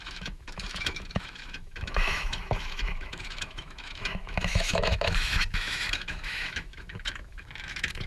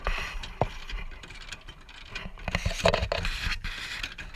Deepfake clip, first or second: first